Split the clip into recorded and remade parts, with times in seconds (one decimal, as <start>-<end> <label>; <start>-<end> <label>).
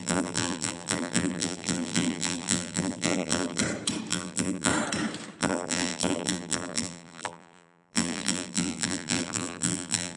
0.0-3.6 remade; 3.6-4.1 recorded; 4.1-4.7 remade; 4.7-5.4 recorded; 5.4-10.2 remade